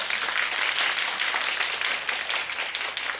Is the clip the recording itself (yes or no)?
yes